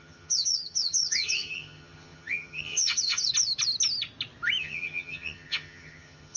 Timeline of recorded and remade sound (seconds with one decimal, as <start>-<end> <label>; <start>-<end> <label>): 0.0-3.3 remade; 3.3-4.6 recorded; 4.6-6.4 remade